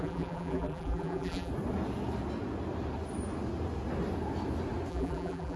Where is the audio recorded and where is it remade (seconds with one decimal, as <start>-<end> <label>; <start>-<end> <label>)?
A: 0.0-1.5 remade; 1.5-4.9 recorded; 4.9-5.6 remade